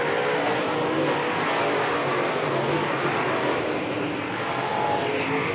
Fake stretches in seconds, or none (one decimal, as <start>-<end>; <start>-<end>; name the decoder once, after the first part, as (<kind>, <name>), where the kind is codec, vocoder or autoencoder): none